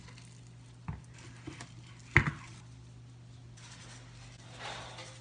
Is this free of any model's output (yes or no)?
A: yes